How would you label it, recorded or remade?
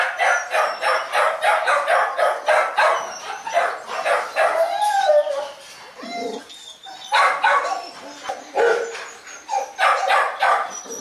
recorded